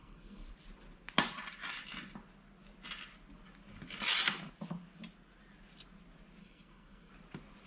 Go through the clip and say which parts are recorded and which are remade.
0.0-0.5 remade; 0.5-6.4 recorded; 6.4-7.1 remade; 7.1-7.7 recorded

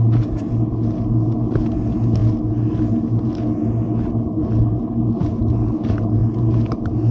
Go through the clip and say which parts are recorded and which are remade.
0.0-7.1 recorded

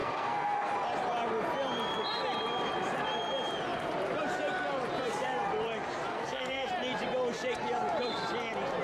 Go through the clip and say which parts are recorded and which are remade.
0.0-0.7 remade; 0.7-6.1 recorded; 6.1-6.7 remade; 6.7-8.8 recorded

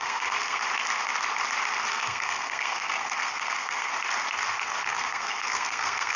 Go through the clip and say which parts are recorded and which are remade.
0.0-0.6 remade; 0.6-1.9 recorded; 1.9-3.9 remade; 3.9-4.8 recorded; 4.8-6.2 remade

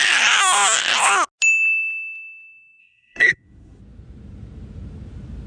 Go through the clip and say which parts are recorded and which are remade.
0.0-2.8 recorded; 2.8-3.8 remade; 3.8-5.5 recorded

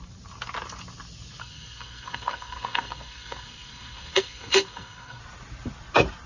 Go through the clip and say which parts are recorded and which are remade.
0.0-1.4 recorded; 1.4-5.2 remade; 5.2-6.3 recorded